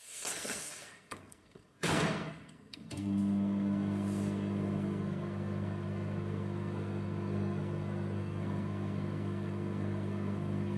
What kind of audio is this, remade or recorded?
remade